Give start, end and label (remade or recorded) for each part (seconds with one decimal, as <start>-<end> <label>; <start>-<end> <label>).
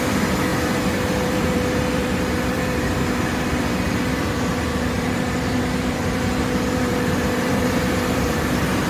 0.0-8.9 remade